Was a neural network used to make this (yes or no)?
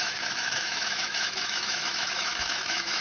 yes